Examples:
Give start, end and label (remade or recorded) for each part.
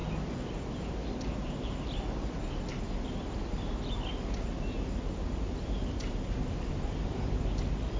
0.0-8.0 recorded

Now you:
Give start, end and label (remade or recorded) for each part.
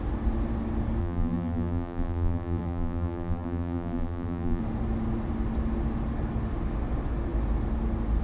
0.0-1.0 recorded; 1.0-4.6 remade; 4.6-8.2 recorded